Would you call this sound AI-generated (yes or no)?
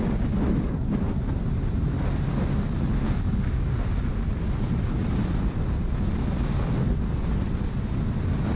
no